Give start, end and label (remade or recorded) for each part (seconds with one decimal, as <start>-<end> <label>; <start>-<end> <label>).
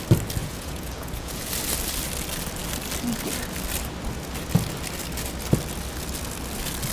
0.0-0.4 recorded; 0.4-1.5 remade; 1.5-6.9 recorded